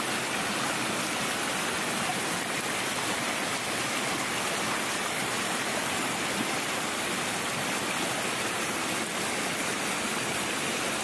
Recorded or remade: recorded